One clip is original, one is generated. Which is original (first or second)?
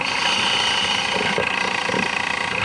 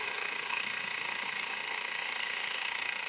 first